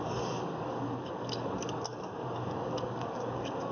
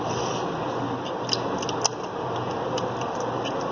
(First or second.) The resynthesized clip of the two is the first